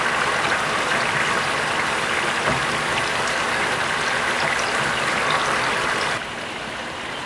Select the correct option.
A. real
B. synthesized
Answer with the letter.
B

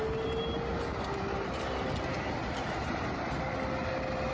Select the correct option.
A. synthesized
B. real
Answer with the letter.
B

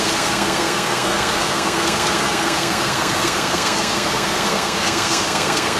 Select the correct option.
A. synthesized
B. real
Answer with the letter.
A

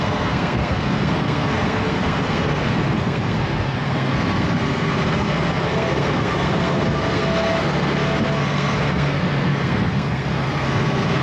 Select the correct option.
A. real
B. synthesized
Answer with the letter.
B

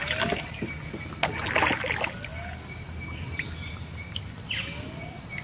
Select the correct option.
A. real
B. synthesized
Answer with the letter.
A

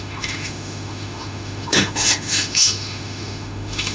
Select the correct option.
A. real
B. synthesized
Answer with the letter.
B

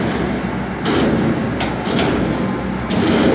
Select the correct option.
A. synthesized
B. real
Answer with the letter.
B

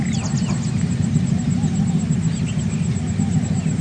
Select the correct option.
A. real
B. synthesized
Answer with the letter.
A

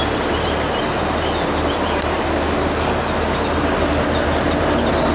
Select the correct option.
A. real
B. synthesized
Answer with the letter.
A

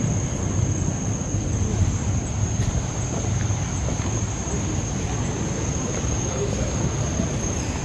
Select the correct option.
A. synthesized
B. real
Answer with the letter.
B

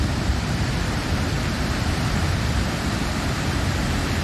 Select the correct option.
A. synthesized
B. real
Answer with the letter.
A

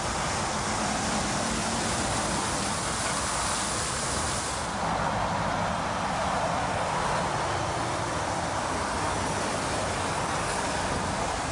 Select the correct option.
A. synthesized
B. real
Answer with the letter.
B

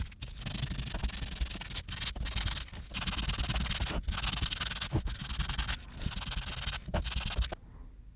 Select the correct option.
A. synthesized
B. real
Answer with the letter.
B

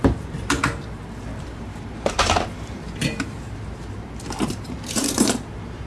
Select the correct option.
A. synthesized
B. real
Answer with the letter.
A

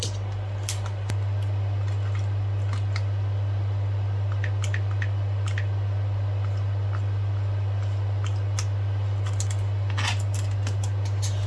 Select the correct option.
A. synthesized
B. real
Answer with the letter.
B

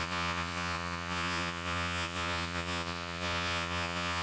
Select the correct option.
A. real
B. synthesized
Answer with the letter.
B